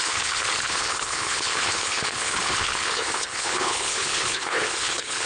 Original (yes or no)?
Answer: no